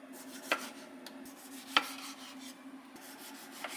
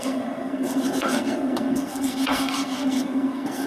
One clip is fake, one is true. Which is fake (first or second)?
second